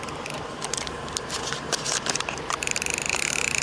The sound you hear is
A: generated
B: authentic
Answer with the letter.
A